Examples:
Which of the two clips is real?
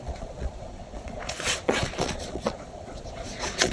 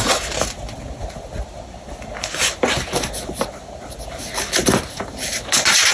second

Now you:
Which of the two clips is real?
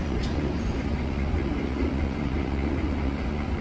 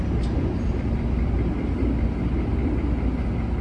second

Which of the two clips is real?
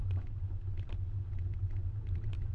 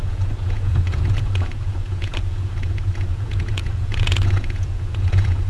first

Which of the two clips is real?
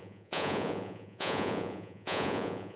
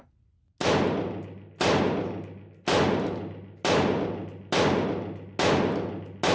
second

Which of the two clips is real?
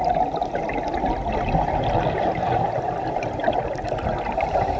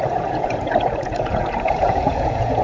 first